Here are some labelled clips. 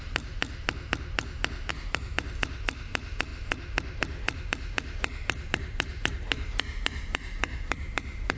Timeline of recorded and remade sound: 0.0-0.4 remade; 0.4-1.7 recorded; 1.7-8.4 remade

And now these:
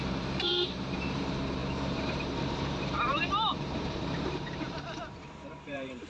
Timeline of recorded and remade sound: 0.0-6.1 remade

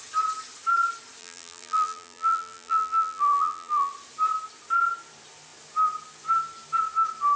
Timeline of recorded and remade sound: 0.0-1.2 recorded; 1.2-3.9 remade; 3.9-7.4 recorded

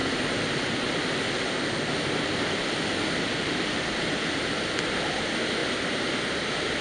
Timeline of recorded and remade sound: 0.0-6.8 recorded

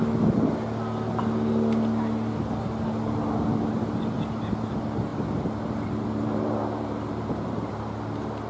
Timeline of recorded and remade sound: 0.0-5.1 recorded; 5.1-7.8 remade; 7.8-8.5 recorded

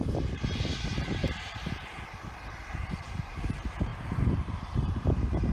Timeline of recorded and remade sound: 0.0-1.2 remade; 1.2-2.5 recorded; 2.5-5.5 remade